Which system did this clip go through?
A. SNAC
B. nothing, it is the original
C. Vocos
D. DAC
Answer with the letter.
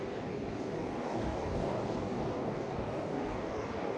D